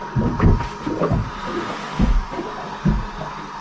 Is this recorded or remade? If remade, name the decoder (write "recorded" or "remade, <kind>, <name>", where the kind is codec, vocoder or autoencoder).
recorded